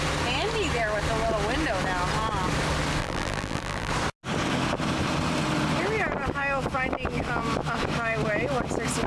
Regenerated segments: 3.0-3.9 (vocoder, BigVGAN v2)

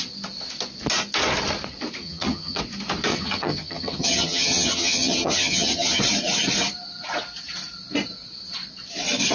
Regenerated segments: 2.0-2.6 (vocoder, HiFi-GAN); 3.1-6.0

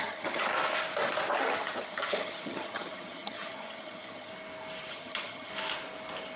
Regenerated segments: 0.0-0.5 (vocoder, HiFi-GAN); 1.4-4.3; 4.9-5.5

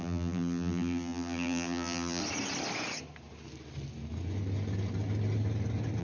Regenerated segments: 0.0-2.2 (vocoder, BigVGAN v2)

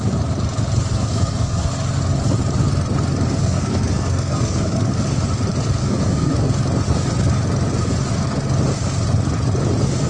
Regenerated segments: 0.9-1.7 (codec, SNAC); 3.4-4.9; 5.8-6.3

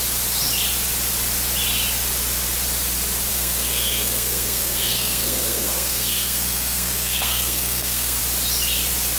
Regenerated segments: 3.3-8.2 (codec, SNAC)

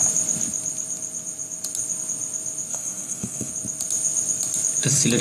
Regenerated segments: 2.7-3.5 (codec, SNAC)